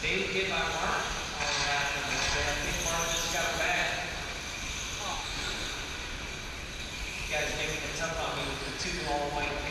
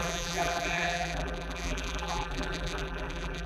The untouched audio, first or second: first